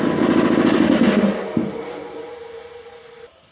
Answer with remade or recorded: recorded